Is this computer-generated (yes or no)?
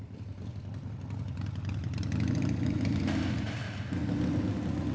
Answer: no